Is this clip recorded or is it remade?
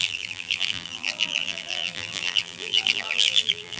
remade